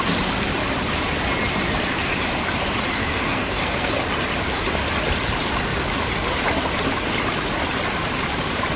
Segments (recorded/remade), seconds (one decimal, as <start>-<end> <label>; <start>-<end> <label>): 0.0-3.0 recorded; 3.0-3.9 remade; 3.9-8.8 recorded